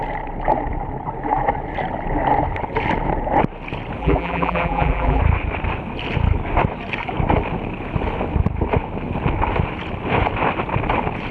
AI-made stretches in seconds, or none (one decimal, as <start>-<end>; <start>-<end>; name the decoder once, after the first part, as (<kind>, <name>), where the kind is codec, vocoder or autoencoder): 4.0-5.2 (vocoder, BigVGAN v2)